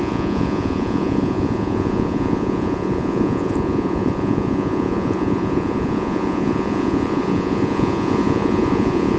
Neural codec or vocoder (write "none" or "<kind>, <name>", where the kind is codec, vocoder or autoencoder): vocoder, Vocos